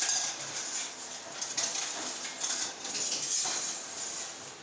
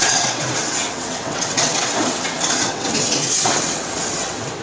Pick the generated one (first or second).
second